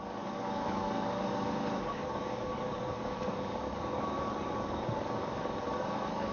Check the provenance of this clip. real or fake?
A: fake